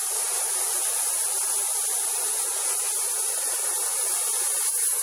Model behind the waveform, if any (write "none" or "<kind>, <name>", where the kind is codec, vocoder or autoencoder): none